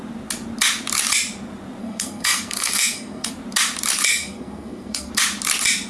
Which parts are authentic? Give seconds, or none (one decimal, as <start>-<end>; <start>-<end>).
0.0-1.8; 3.3-4.1; 5.1-5.9